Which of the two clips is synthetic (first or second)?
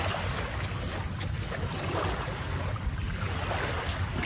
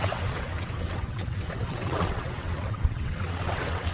second